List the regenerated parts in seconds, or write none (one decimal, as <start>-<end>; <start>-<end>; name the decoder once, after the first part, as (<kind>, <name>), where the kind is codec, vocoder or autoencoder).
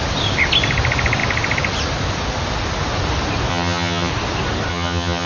3.5-4.1 (vocoder, HiFi-GAN); 4.7-5.3